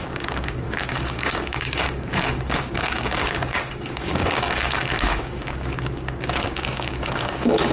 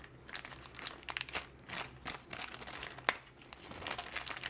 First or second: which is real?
second